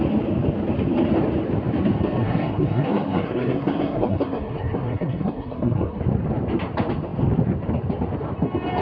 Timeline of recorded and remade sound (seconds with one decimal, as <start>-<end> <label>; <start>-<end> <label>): 0.0-2.2 recorded; 2.2-6.0 remade; 6.0-8.8 recorded